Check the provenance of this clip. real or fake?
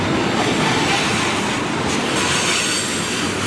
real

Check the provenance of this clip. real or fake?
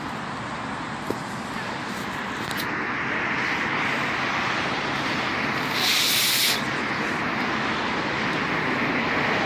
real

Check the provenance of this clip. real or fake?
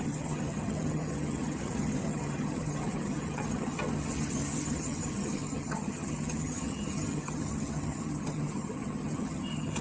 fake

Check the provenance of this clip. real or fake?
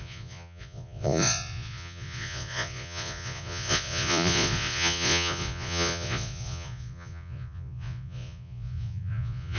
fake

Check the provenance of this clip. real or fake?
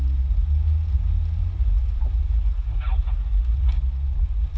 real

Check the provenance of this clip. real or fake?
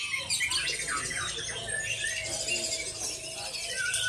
real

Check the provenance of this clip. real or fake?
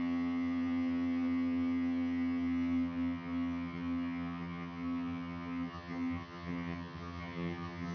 fake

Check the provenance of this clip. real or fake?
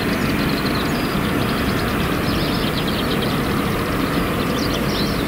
real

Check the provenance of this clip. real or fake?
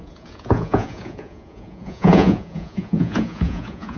fake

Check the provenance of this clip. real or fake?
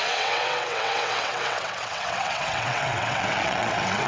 fake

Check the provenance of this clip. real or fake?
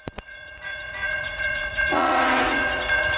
fake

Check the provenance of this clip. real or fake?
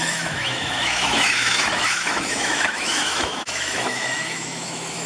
fake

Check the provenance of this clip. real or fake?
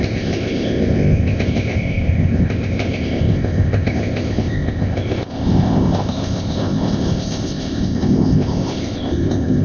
fake